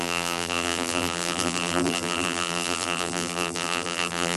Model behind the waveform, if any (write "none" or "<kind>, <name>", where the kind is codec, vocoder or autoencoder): vocoder, BigVGAN v2